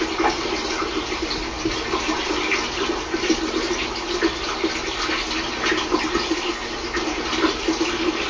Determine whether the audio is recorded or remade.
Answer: recorded